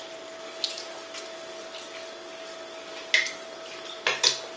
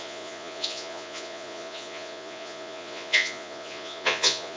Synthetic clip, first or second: second